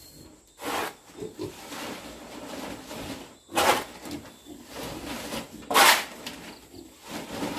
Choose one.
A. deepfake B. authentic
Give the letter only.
B